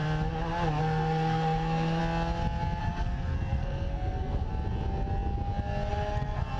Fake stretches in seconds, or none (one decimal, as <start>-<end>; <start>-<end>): 0.8-2.0; 2.8-4.5; 5.9-6.6